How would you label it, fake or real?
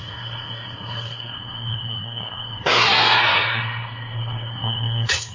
fake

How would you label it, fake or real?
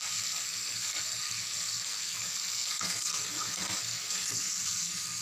fake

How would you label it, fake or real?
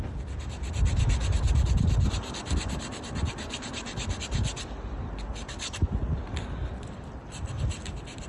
real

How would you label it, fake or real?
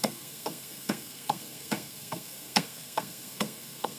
fake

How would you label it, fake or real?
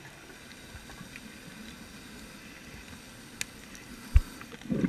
real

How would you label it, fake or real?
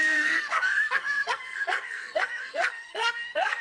fake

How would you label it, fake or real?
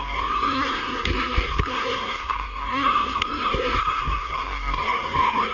fake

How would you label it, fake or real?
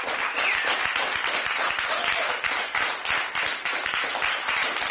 real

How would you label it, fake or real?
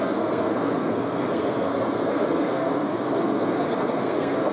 fake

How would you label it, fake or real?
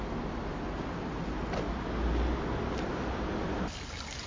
real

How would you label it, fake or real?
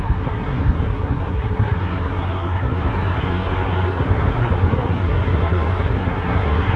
fake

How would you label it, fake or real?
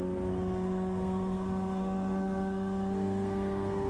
fake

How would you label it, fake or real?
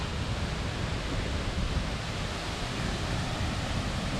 real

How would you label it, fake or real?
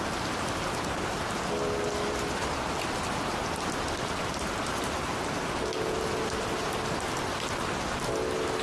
real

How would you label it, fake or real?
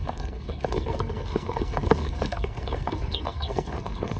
fake